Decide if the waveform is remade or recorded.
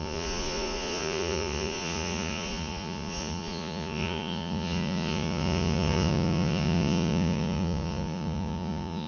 remade